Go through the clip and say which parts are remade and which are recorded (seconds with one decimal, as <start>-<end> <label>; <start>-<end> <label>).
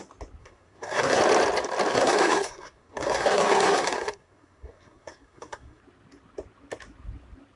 0.0-0.4 recorded; 0.4-1.2 remade; 1.2-1.9 recorded; 1.9-5.8 remade; 5.8-7.6 recorded